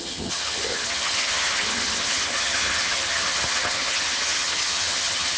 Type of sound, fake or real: fake